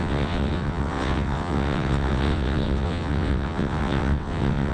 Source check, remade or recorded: remade